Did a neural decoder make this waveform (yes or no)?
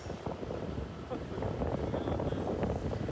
no